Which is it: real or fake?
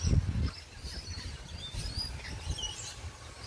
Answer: real